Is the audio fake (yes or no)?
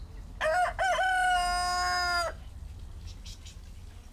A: no